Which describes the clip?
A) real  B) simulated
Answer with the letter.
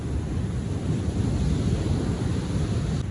A